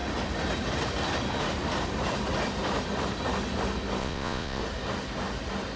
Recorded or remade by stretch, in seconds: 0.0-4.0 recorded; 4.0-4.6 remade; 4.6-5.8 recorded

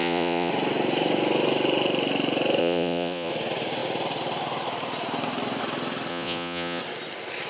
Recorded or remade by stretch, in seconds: 0.0-0.5 remade; 0.5-2.6 recorded; 2.6-3.3 remade; 3.3-6.1 recorded; 6.1-6.8 remade; 6.8-7.5 recorded

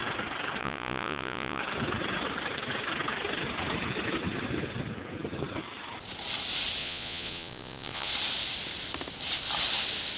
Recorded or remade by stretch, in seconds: 0.0-0.6 recorded; 0.6-1.6 remade; 1.6-6.8 recorded; 6.8-8.1 remade; 8.1-10.2 recorded

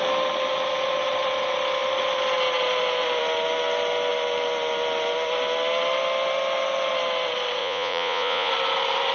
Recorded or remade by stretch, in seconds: 0.0-7.6 recorded; 7.6-8.5 remade; 8.5-9.1 recorded

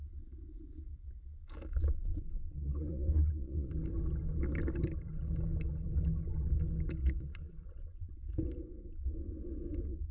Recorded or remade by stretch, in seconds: 0.0-2.1 recorded; 2.1-3.7 remade; 3.7-7.0 recorded; 7.0-8.1 remade; 8.1-10.1 recorded